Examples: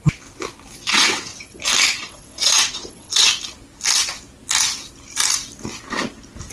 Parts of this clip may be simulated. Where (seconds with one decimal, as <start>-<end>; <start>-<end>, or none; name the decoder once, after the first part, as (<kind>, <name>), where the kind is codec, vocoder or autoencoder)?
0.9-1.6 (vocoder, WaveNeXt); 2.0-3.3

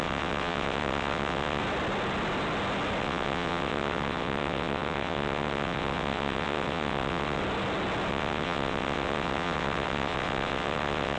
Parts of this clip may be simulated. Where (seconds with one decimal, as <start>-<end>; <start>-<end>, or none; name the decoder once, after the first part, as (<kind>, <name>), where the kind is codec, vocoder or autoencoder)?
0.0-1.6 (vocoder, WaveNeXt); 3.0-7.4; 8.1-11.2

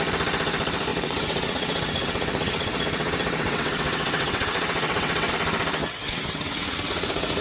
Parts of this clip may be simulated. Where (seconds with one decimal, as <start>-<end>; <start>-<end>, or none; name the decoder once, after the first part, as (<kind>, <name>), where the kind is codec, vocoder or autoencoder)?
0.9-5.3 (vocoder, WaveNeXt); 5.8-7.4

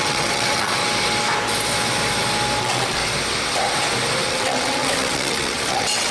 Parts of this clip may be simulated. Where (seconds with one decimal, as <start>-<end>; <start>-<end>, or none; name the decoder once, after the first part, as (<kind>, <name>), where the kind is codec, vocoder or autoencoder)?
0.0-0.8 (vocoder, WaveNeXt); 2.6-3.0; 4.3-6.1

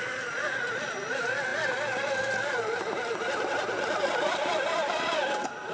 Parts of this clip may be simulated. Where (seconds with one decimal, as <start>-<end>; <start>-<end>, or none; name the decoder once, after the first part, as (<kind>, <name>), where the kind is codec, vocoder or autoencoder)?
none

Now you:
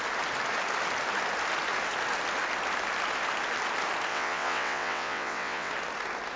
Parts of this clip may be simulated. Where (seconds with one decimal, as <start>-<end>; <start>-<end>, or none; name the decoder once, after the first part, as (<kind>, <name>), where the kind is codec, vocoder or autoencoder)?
4.1-5.7 (vocoder, WaveNeXt)

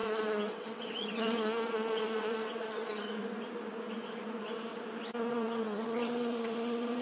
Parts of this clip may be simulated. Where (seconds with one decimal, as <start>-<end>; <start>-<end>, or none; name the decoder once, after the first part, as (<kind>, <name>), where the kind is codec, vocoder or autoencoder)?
0.0-3.2 (vocoder, WaveNeXt); 5.3-7.0